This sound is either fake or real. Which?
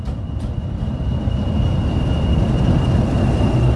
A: real